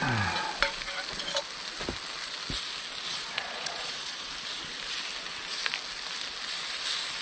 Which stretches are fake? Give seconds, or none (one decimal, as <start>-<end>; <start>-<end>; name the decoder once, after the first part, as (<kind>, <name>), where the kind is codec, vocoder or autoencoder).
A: 3.1-4.3 (vocoder, Vocos)